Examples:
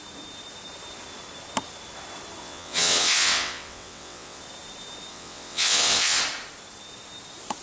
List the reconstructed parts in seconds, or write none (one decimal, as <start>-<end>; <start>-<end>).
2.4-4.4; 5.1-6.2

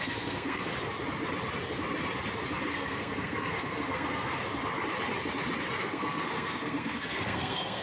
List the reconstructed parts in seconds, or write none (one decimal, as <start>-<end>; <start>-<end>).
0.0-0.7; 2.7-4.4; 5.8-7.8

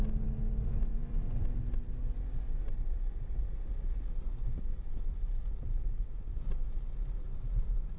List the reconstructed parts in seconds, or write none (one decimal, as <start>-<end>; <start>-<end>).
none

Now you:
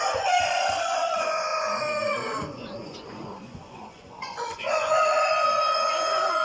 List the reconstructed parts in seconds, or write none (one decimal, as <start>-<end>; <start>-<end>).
0.0-6.4